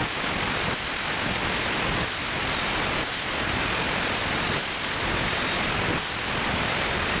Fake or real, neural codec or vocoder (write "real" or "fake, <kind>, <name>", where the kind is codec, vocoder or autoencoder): real